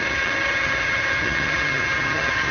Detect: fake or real fake